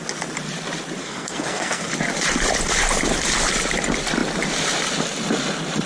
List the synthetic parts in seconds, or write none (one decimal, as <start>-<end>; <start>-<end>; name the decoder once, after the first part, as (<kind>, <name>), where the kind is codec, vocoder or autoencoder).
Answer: 1.0-1.9 (codec, SNAC)